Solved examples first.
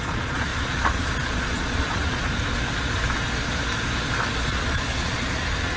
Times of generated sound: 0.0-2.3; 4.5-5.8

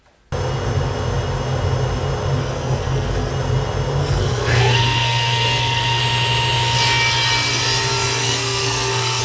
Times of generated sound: 2.4-3.3; 4.0-6.0; 8.2-9.2

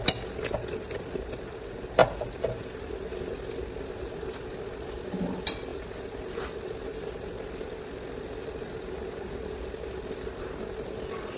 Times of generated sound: none

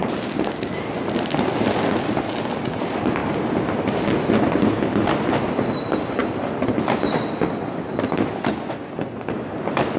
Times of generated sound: 3.2-4.2; 6.2-7.9

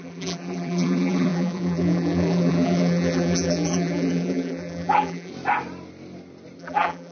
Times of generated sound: 0.0-5.3; 6.6-7.1